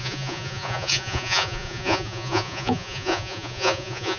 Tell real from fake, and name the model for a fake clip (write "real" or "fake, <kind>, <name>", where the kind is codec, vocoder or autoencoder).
fake, vocoder, Vocos